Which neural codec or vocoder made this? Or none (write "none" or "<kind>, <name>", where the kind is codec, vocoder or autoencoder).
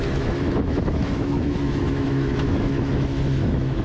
autoencoder, DAC-VAE